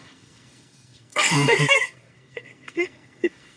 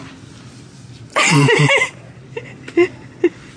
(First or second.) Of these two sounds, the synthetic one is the first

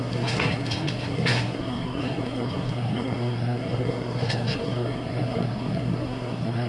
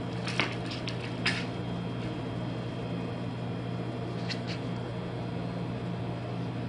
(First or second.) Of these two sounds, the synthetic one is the first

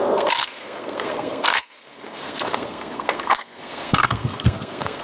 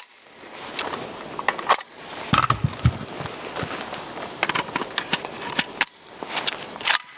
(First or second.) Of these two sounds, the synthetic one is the first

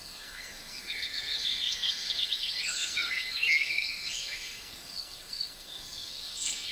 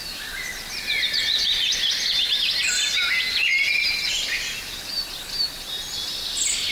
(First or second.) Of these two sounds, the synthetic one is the first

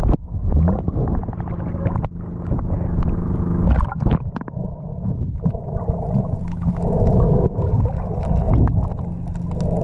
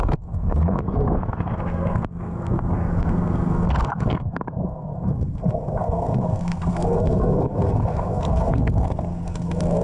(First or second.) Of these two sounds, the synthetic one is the second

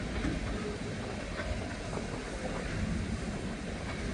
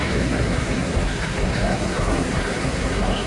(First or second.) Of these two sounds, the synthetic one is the second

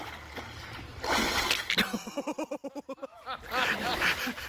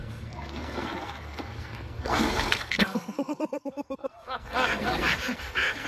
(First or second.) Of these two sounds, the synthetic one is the second